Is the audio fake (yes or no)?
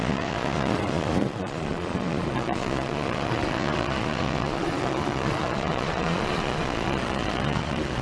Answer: yes